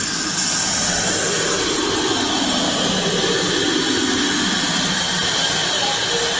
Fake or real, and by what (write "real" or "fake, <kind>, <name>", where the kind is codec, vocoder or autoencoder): real